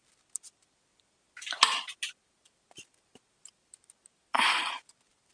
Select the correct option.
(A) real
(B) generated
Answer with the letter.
B